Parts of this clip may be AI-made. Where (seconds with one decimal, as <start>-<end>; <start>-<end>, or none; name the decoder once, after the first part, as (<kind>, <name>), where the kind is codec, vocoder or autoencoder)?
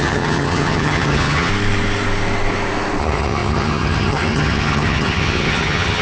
0.0-1.5 (vocoder, HiFi-GAN); 3.0-6.0